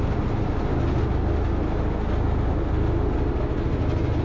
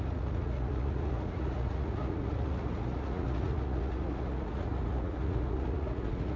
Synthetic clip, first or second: second